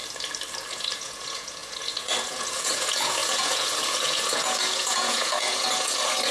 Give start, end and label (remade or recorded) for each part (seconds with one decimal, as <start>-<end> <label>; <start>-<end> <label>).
0.0-0.7 recorded; 0.7-6.3 remade